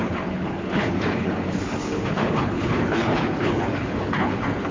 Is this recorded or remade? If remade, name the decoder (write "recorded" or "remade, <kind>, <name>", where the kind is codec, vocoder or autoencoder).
remade, codec, HILCodec